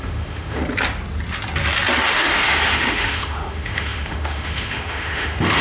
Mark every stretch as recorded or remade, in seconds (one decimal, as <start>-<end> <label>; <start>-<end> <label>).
0.0-0.6 remade; 0.6-2.1 recorded; 2.1-5.6 remade

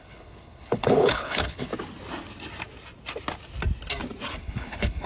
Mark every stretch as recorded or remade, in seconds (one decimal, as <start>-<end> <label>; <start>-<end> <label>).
0.0-1.7 remade; 1.7-4.4 recorded; 4.4-5.1 remade

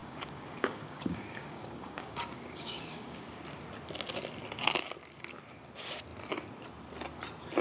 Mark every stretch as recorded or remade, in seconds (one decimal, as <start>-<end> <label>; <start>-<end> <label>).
0.0-3.4 remade; 3.4-7.6 recorded

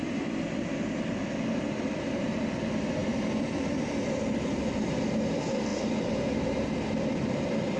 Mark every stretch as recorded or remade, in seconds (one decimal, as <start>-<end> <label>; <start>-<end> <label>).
0.0-3.0 remade; 3.0-4.8 recorded; 4.8-5.7 remade; 5.7-6.8 recorded; 6.8-7.8 remade